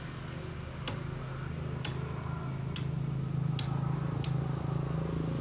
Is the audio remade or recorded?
recorded